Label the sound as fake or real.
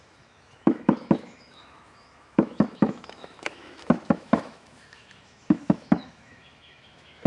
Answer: fake